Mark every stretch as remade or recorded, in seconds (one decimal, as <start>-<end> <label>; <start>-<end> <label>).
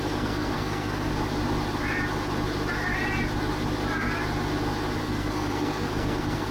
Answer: 0.0-1.1 remade; 1.1-5.0 recorded; 5.0-6.5 remade